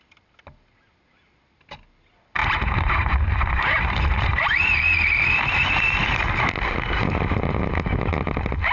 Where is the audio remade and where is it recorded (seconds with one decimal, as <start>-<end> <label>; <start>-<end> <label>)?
0.0-2.4 recorded; 2.4-4.8 remade; 4.8-8.7 recorded